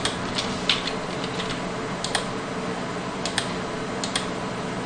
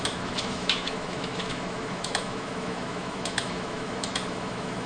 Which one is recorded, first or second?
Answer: first